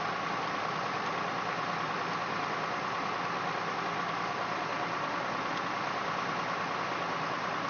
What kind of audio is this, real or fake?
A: real